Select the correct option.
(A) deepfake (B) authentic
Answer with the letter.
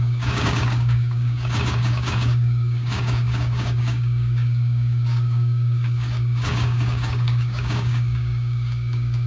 A